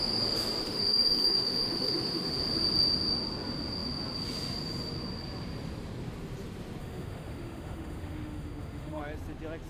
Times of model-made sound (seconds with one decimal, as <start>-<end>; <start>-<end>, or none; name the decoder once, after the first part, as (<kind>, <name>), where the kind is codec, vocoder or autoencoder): 0.6-2.4 (autoencoder, DAC-VAE); 6.8-9.0